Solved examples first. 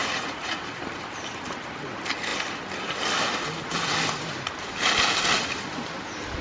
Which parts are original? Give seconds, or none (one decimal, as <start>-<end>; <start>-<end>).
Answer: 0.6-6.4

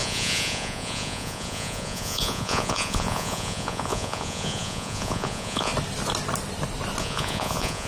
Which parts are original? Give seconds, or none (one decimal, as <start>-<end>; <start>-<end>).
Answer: 5.7-7.0

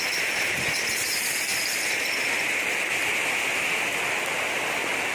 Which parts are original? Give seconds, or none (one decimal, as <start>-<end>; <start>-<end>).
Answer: 0.0-5.1

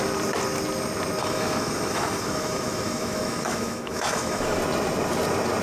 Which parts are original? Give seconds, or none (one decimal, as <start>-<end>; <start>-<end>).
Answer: 0.0-1.2; 4.6-5.6